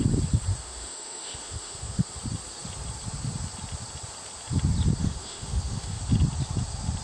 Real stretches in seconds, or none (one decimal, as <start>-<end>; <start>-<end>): 0.0-0.5; 2.2-5.0; 6.0-7.0